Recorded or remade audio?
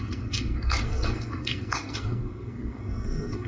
remade